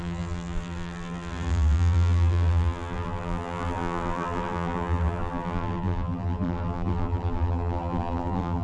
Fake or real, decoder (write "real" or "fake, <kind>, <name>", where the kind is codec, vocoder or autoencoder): fake, vocoder, BigVGAN v2